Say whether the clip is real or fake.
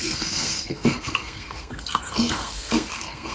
fake